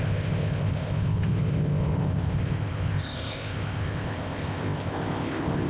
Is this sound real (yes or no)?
no